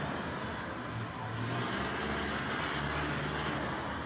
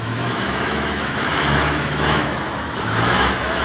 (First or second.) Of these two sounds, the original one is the first